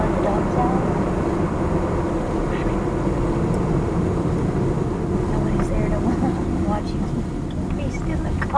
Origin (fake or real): real